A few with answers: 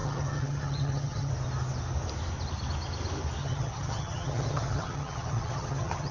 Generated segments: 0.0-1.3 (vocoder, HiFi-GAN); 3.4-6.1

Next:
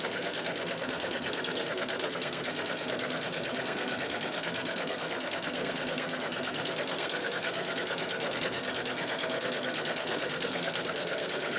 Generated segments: 0.0-11.6 (codec, SNAC)

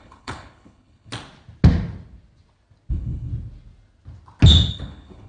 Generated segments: 0.0-1.1 (codec, HILCodec); 2.9-3.3; 4.7-5.3